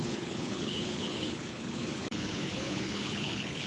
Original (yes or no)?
no